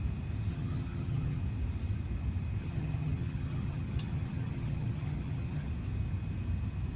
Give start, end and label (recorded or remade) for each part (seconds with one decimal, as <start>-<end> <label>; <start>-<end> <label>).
0.0-0.5 recorded; 0.5-1.4 remade; 1.4-2.6 recorded; 2.6-5.7 remade; 5.7-7.0 recorded